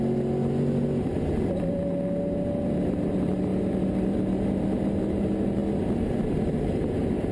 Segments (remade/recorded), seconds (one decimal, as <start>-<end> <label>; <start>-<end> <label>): 0.0-7.3 recorded